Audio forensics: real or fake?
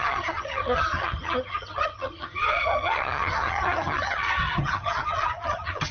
fake